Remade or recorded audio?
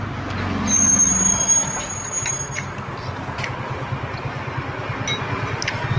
recorded